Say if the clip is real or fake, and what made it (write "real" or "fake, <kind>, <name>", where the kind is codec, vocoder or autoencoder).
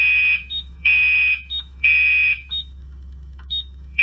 fake, autoencoder, DAC-VAE